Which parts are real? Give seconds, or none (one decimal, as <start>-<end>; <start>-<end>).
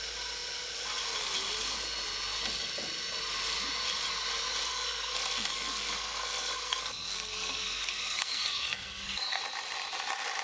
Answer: 0.0-4.7; 9.4-10.4